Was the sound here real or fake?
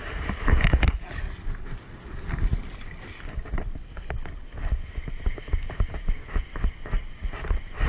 real